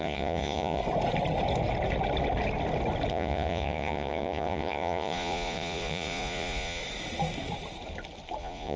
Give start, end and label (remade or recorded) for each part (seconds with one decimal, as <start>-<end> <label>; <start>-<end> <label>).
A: 0.0-0.8 remade; 0.8-3.1 recorded; 3.1-6.8 remade; 6.8-8.4 recorded; 8.4-8.8 remade

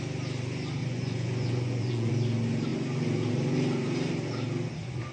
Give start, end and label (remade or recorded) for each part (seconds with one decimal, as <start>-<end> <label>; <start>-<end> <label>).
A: 0.0-0.8 recorded; 0.8-2.1 remade; 2.1-5.1 recorded

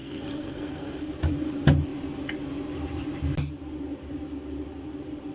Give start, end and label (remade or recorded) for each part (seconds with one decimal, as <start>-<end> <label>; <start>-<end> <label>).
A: 0.0-1.0 remade; 1.0-5.3 recorded